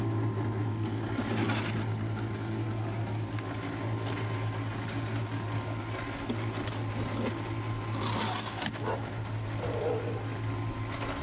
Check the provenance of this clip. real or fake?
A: real